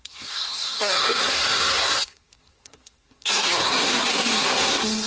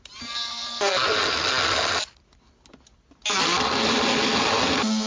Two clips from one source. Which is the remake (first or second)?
first